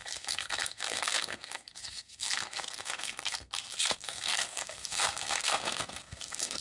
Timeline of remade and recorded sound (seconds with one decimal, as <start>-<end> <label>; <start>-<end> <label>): 0.0-6.6 remade